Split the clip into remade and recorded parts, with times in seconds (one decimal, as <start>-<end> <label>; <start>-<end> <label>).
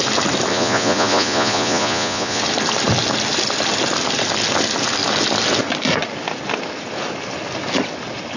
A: 0.0-0.5 recorded; 0.5-2.4 remade; 2.4-8.4 recorded